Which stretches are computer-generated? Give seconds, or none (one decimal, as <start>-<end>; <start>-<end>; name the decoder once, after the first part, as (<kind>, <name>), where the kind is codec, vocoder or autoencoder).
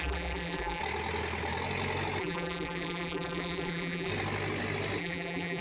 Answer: 0.0-0.8 (vocoder, BigVGAN v2); 2.2-4.1; 5.0-5.6